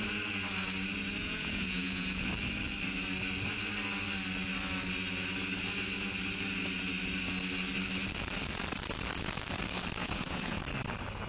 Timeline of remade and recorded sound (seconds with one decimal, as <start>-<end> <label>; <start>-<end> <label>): 0.0-1.2 recorded; 1.2-2.3 remade; 2.3-10.0 recorded; 10.0-10.6 remade; 10.6-11.3 recorded